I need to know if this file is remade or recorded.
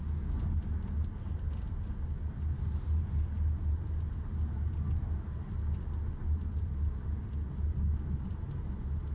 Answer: recorded